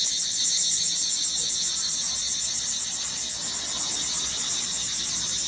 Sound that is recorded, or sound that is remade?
recorded